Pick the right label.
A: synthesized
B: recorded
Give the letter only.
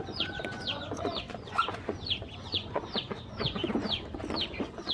A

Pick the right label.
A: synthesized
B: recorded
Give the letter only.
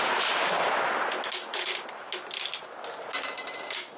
B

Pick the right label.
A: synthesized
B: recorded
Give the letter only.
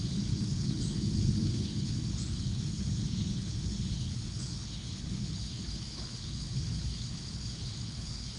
A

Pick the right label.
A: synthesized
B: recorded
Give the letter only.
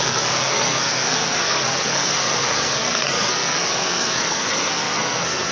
A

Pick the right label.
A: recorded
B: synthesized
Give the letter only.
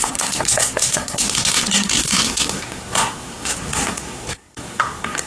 B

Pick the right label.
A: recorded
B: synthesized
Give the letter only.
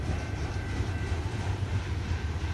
B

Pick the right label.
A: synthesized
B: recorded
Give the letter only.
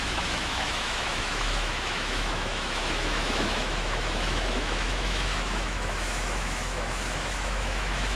A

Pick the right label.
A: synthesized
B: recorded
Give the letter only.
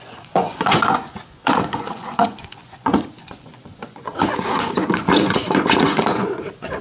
A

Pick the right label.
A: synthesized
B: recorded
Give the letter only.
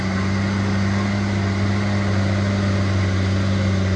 B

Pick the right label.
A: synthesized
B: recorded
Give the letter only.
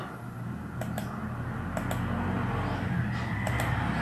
B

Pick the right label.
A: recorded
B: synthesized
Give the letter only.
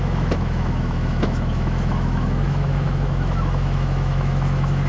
B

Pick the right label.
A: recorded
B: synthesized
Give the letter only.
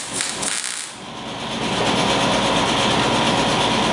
A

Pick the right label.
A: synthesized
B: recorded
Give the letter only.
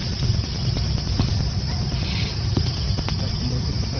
B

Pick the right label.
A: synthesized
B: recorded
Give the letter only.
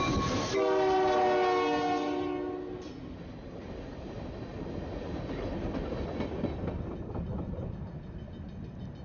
B